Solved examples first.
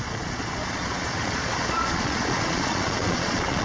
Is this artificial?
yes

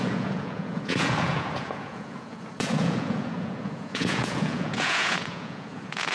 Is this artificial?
yes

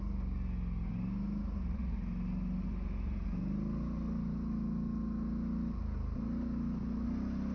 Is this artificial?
no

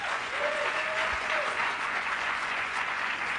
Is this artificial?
yes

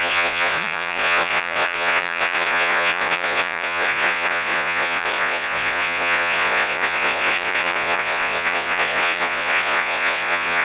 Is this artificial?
yes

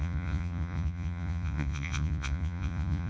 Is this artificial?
yes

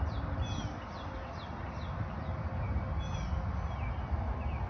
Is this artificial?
no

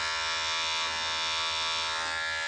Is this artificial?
no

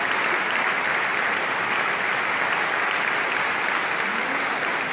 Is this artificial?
no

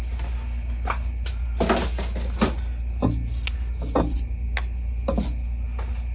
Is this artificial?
no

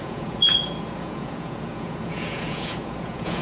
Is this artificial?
yes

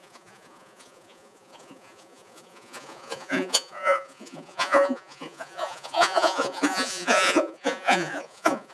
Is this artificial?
yes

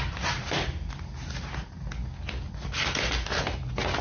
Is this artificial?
no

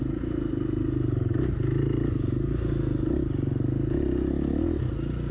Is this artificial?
no